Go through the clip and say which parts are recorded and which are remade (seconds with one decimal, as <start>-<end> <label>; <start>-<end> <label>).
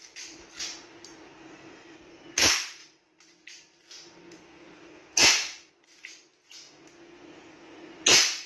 0.0-8.5 recorded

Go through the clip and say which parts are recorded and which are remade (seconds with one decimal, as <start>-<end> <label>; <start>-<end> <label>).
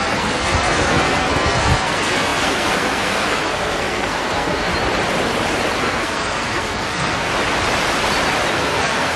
0.0-4.7 remade; 4.7-5.8 recorded; 5.8-7.3 remade; 7.3-8.5 recorded; 8.5-9.2 remade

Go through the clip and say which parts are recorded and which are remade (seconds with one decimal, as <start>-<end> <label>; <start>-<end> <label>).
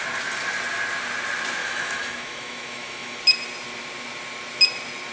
0.0-1.6 recorded; 1.6-3.2 remade; 3.2-5.1 recorded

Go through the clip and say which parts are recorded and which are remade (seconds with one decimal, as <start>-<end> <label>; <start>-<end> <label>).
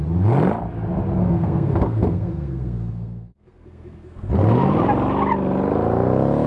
0.0-1.2 recorded; 1.2-4.3 remade; 4.3-6.5 recorded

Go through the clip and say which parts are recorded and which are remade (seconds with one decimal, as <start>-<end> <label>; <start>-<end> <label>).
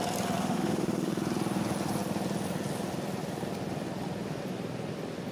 0.0-0.4 recorded; 0.4-1.2 remade; 1.2-5.3 recorded